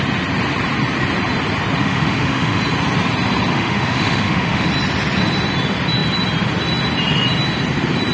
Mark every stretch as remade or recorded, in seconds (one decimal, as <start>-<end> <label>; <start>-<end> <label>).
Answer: 0.0-1.8 recorded; 1.8-2.6 remade; 2.6-3.5 recorded; 3.5-4.7 remade; 4.7-8.1 recorded